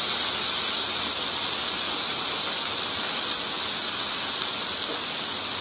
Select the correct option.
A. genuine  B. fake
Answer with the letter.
A